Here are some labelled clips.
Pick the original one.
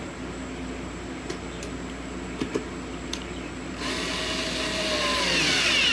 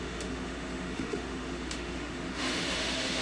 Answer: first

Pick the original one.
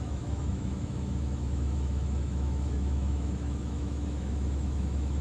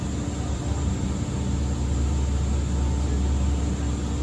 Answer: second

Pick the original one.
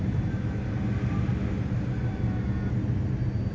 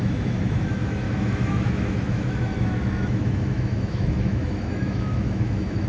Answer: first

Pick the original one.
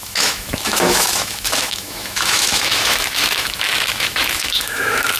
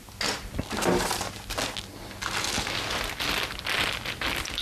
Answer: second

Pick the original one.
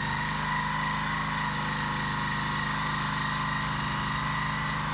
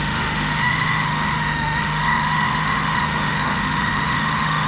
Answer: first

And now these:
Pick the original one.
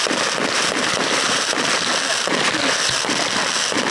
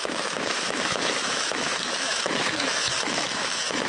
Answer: first